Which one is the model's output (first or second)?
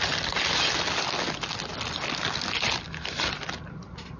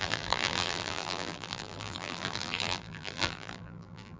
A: second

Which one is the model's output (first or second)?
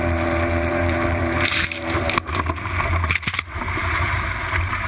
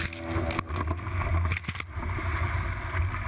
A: first